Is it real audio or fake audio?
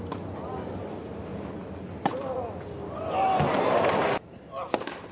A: real